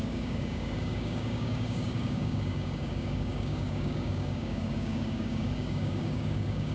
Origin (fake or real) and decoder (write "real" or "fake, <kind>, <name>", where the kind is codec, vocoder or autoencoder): fake, codec, DAC